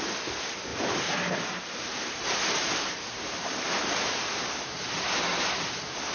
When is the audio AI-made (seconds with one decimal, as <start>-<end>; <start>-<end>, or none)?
0.7-4.4